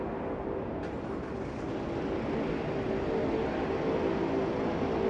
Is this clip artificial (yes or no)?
no